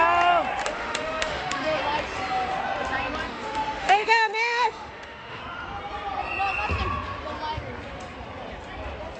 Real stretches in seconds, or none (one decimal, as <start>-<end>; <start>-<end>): 0.0-0.6; 1.8-3.3; 5.4-9.2